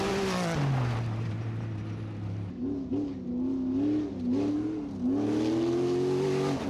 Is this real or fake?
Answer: real